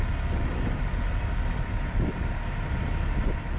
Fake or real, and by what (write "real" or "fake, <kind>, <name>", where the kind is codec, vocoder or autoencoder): real